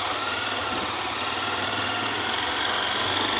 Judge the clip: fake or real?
real